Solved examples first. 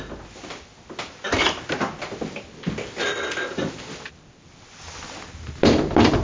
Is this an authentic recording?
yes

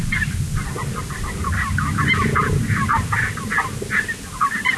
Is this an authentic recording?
yes